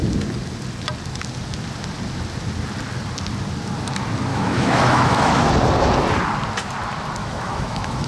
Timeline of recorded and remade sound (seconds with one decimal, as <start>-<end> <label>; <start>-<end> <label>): 0.0-4.3 recorded; 4.3-5.5 remade; 5.5-7.2 recorded; 7.2-8.1 remade